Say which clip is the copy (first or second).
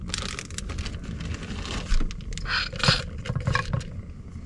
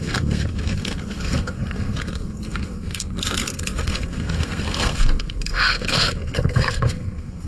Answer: second